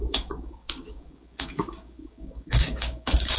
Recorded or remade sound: remade